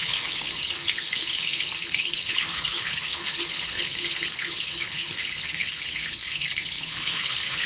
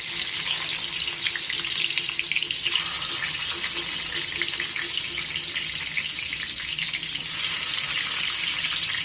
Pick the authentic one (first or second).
second